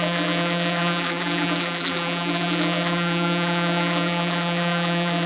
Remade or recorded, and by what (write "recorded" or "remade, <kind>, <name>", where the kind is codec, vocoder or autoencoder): remade, vocoder, BigVGAN v2